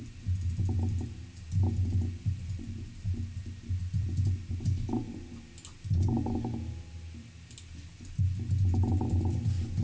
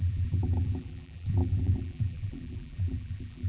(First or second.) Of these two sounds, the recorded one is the first